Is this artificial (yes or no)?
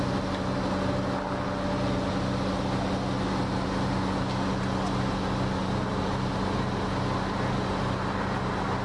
no